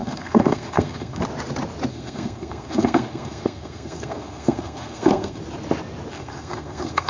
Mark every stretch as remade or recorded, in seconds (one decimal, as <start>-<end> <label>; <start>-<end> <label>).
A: 0.0-1.2 remade; 1.2-1.9 recorded; 1.9-5.4 remade; 5.4-6.1 recorded; 6.1-7.1 remade